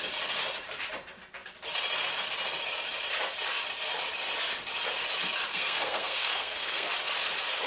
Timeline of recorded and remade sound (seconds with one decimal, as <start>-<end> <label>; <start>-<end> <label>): 0.0-5.5 recorded; 5.5-6.9 remade; 6.9-7.7 recorded